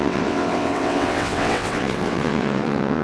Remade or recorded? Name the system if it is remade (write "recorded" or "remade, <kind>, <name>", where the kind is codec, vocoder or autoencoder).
remade, vocoder, WaveNeXt